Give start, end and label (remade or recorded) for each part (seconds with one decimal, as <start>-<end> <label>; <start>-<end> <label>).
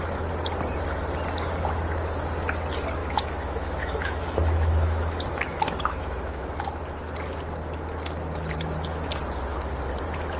0.0-3.0 recorded; 3.0-6.6 remade; 6.6-10.4 recorded